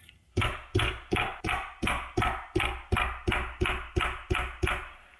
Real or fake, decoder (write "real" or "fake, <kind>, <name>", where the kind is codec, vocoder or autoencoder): real